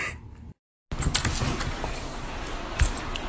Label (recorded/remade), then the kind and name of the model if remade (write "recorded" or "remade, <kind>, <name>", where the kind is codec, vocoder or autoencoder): recorded